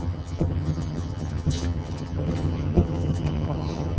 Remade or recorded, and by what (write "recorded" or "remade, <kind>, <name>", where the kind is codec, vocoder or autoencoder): remade, vocoder, HiFi-GAN